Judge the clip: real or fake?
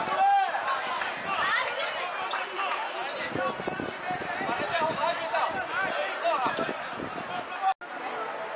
real